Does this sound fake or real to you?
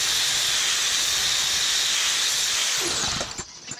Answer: real